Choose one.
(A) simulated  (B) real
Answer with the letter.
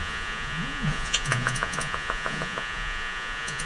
A